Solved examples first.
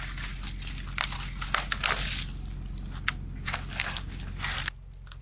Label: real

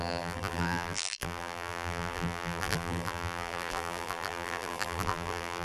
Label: fake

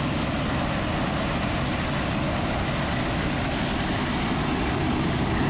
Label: real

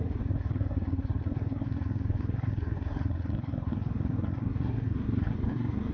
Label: fake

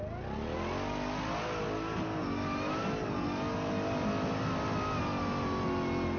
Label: real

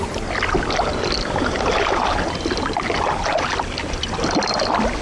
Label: real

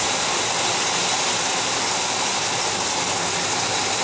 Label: real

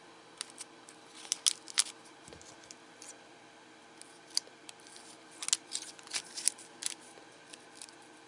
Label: real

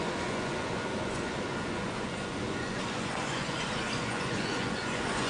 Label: fake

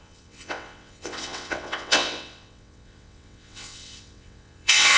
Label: fake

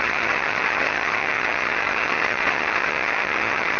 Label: fake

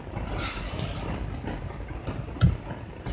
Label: real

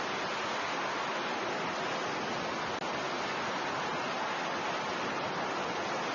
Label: real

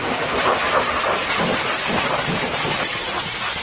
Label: fake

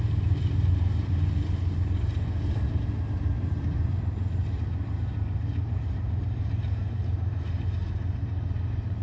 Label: fake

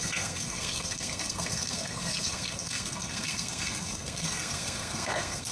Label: fake